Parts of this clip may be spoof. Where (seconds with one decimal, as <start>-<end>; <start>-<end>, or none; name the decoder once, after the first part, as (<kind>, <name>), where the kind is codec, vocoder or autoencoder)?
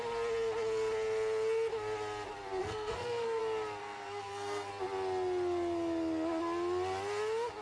2.6-3.4 (codec, SNAC); 3.8-4.7